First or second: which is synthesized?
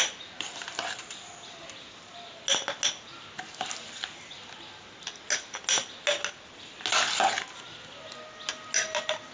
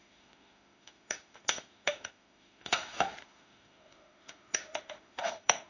second